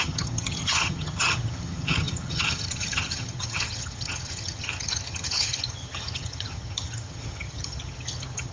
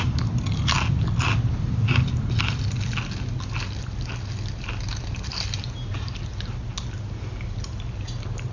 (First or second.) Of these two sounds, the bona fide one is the second